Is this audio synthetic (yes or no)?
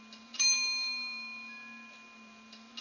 no